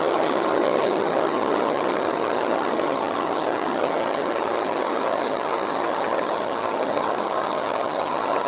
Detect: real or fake fake